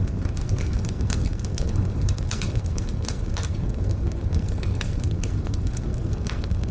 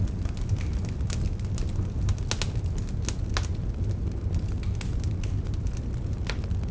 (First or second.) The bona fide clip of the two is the second